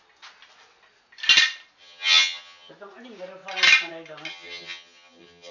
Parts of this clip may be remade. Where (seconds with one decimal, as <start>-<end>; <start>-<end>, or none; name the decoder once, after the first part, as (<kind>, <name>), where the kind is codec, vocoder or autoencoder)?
1.8-2.7 (vocoder, HiFi-GAN); 4.3-5.5

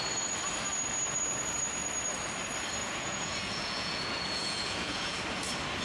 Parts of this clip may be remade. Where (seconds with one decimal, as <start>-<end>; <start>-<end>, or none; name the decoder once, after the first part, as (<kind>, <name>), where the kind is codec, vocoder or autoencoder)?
2.8-5.2 (vocoder, Vocos)

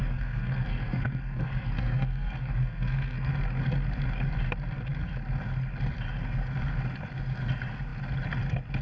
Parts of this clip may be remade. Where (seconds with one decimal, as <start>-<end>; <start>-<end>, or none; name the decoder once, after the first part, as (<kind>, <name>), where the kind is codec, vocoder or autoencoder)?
0.0-3.3 (codec, SNAC)

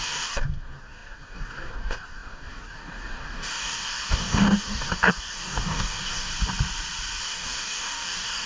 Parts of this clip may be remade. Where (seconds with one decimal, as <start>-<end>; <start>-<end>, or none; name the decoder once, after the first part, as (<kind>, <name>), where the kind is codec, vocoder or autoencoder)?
0.0-6.3 (codec, DAC); 7.2-8.5